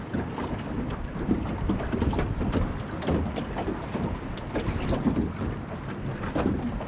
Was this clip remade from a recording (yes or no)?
no